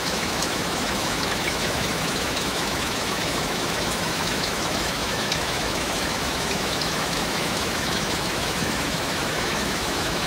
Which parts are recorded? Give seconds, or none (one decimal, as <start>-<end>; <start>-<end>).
none